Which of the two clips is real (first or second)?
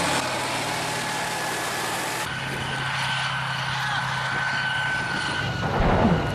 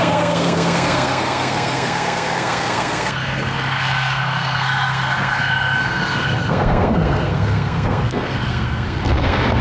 first